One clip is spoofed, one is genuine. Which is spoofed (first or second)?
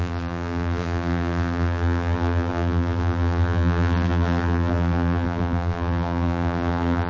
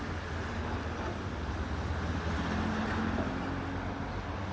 first